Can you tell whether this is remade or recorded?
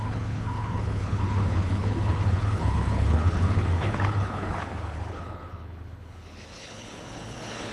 remade